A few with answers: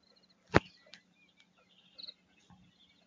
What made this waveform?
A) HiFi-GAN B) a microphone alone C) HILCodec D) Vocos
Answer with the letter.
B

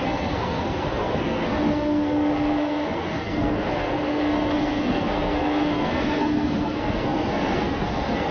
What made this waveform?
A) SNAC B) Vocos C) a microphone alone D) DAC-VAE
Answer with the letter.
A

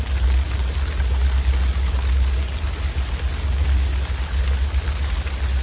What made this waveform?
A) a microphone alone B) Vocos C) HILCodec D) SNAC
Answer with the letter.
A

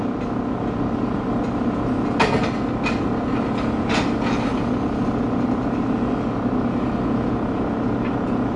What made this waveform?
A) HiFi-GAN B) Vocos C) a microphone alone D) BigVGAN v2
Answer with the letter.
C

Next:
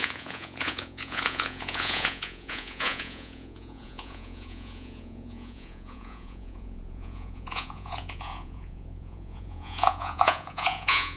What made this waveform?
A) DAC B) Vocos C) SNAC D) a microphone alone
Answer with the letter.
B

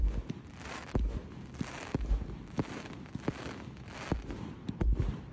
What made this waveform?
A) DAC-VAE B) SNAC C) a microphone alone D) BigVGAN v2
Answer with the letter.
C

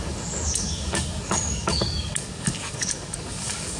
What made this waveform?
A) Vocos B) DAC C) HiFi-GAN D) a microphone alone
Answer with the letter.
B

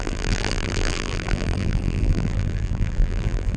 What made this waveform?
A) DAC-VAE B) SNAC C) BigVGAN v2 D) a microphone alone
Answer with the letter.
C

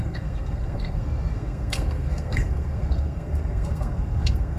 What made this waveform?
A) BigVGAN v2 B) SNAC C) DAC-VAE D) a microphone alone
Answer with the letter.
B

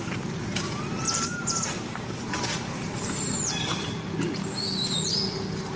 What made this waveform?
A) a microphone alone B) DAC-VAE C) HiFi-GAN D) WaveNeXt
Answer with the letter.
A